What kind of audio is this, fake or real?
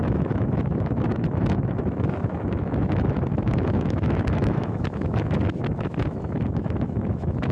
fake